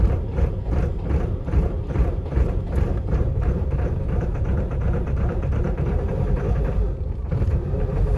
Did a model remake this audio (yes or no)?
yes